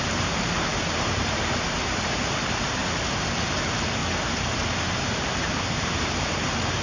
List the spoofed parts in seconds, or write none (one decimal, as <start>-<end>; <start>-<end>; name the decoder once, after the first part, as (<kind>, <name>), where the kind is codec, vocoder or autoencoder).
0.0-2.8 (vocoder, BigVGAN v2); 3.3-4.0; 5.7-6.8